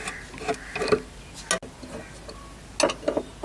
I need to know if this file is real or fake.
real